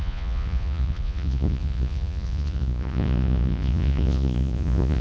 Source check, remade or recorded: remade